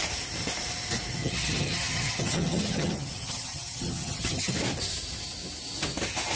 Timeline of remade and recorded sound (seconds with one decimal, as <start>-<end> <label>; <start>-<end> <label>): 0.0-1.2 recorded; 1.2-4.5 remade; 4.5-6.4 recorded